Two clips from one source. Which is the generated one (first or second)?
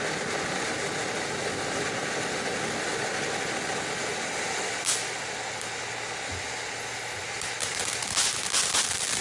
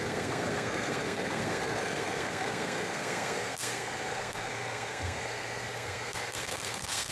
second